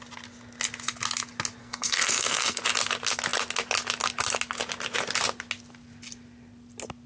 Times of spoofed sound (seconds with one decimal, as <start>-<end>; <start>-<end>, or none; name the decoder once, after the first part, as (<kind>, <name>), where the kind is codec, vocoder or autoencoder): 1.6-2.6 (codec, SNAC)